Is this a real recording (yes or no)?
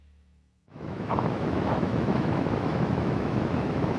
no